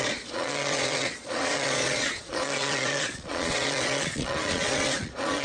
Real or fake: fake